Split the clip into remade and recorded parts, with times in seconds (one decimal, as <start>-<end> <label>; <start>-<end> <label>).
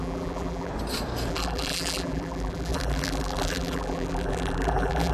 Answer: 0.0-0.7 remade; 0.7-1.3 recorded; 1.3-5.1 remade